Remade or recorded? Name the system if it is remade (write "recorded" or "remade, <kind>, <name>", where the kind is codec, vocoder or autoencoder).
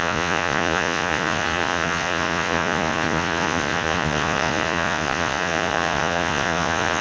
remade, vocoder, Vocos